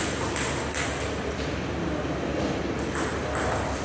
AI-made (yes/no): no